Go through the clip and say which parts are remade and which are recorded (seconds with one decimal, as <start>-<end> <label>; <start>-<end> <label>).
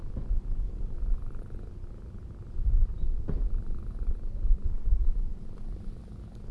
0.0-1.4 remade; 1.4-2.9 recorded; 2.9-6.0 remade; 6.0-6.5 recorded